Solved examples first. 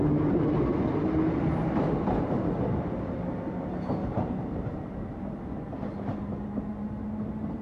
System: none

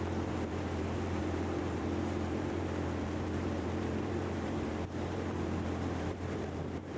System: vocoder, BigVGAN v2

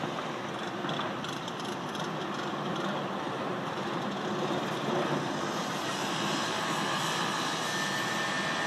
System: none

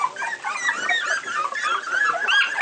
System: none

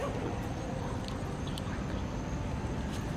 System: none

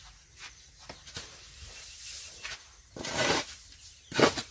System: none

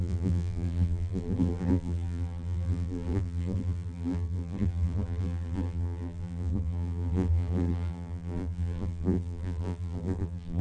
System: vocoder, BigVGAN v2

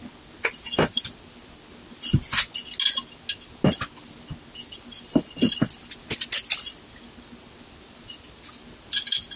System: none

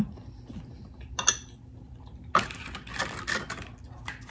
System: none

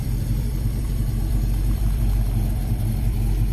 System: vocoder, BigVGAN v2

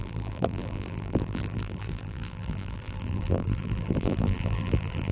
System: vocoder, BigVGAN v2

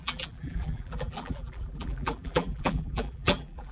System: vocoder, BigVGAN v2